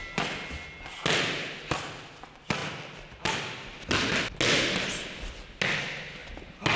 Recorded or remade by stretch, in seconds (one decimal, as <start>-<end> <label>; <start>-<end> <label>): 0.0-6.8 recorded